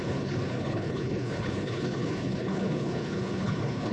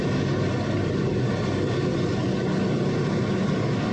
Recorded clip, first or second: second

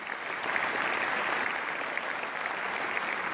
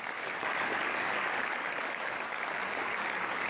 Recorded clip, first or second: first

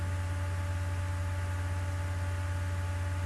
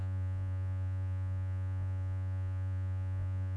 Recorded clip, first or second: first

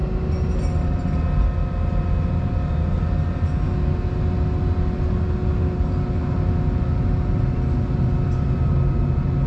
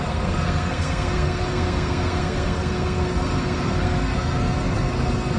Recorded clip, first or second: first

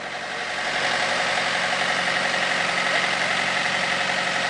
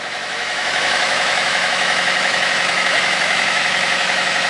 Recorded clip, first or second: first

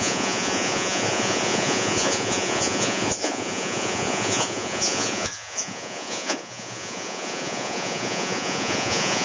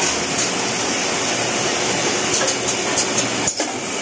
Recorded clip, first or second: second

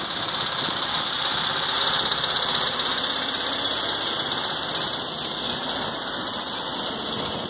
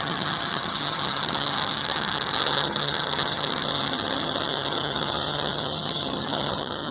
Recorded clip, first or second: first